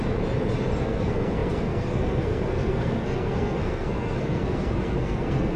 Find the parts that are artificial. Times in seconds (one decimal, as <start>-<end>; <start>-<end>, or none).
0.8-5.6